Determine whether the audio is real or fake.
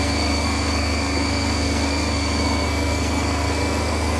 fake